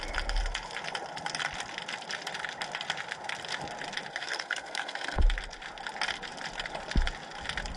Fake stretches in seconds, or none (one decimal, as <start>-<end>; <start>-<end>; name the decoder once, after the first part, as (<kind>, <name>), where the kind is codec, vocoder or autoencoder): 4.1-5.2 (codec, SNAC)